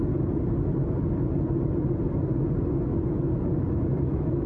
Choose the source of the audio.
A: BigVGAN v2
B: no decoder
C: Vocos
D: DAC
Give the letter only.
B